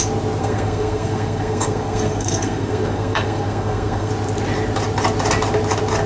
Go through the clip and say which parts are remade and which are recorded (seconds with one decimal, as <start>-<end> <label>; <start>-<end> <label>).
0.0-0.4 recorded; 0.4-4.1 remade; 4.1-6.1 recorded